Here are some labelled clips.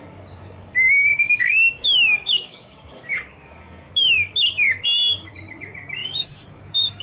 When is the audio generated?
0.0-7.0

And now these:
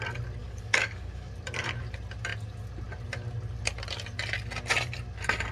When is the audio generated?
0.4-1.3

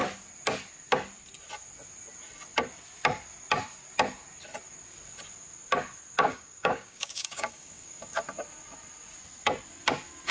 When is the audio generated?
6.3-8.0

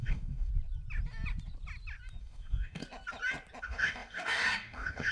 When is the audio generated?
0.0-0.5; 2.2-2.8; 3.6-5.1

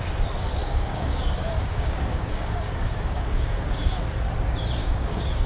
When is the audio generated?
0.6-3.9; 4.8-5.5

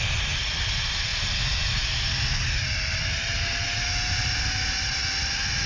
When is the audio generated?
none

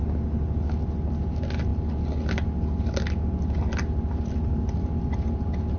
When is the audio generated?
none